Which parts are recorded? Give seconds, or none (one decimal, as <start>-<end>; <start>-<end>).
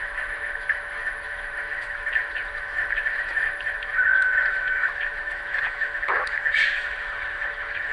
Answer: 3.9-4.5